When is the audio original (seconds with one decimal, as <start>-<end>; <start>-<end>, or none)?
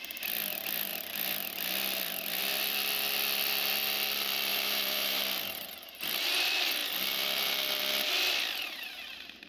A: 0.0-4.5; 5.2-9.5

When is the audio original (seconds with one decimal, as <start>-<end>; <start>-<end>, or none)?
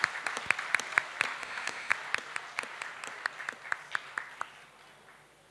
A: 0.0-1.4; 1.9-5.5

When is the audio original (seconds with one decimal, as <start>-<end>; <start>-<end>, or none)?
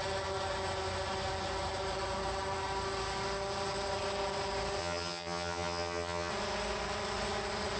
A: 0.0-4.8; 6.3-7.8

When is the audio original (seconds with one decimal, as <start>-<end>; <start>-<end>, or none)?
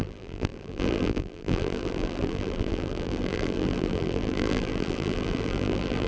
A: none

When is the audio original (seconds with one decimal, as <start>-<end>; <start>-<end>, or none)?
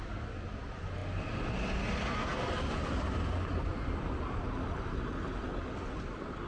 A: 0.0-6.5